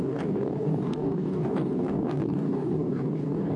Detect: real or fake fake